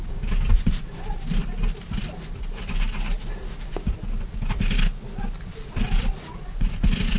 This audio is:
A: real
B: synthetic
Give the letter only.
A